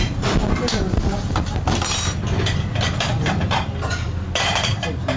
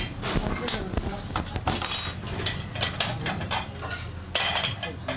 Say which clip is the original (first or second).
second